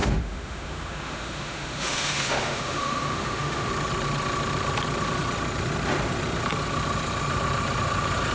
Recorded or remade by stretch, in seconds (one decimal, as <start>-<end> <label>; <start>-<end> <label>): 0.0-3.7 remade; 3.7-8.3 recorded